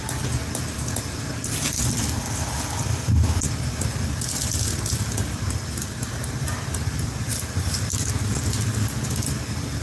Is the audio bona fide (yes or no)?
yes